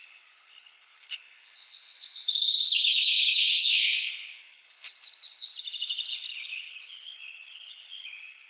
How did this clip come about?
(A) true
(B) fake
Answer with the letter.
B